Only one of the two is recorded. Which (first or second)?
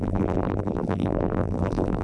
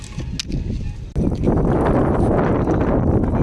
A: second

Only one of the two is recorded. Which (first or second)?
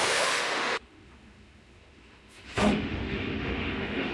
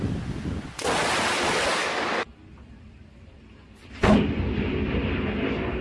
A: second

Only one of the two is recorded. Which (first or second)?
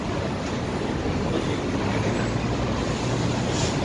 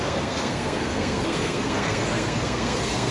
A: first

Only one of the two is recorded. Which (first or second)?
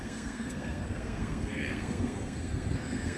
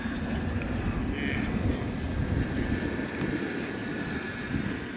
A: second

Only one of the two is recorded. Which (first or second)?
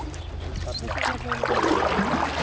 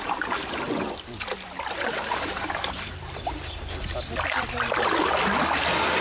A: first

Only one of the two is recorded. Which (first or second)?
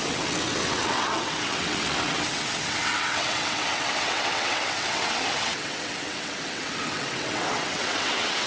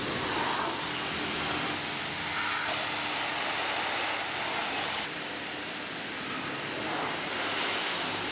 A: second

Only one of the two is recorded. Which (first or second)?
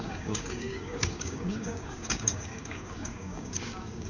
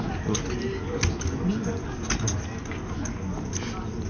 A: second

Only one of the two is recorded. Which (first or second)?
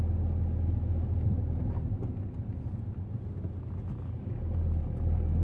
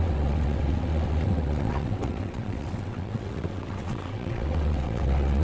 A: first